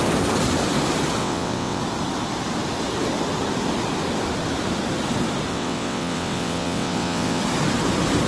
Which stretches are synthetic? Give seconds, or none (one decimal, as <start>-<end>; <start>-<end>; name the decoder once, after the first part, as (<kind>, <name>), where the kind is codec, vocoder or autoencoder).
1.2-1.8 (vocoder, WaveNeXt); 5.5-7.4